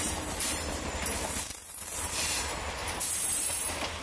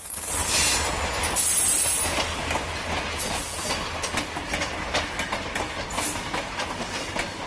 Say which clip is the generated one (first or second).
first